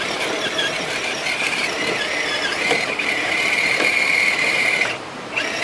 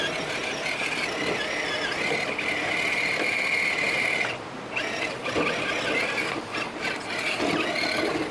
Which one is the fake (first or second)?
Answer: first